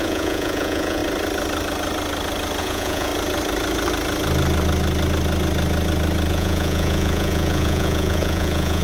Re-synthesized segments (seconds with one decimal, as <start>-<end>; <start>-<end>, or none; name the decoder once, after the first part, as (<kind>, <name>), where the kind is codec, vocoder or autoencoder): 0.0-1.0 (vocoder, Vocos); 2.6-3.1; 6.3-8.8